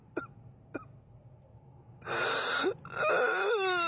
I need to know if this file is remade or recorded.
recorded